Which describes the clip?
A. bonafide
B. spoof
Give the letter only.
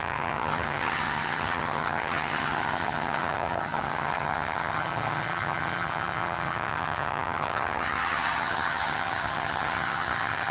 B